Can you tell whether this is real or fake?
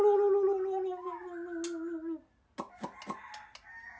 real